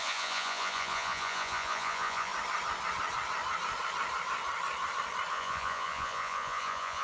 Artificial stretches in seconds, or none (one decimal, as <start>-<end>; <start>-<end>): 0.0-2.3; 5.3-7.0